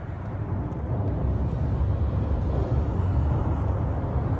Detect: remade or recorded recorded